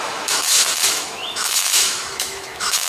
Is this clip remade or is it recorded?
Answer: remade